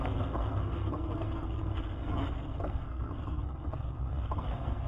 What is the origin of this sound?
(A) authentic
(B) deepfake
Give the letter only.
B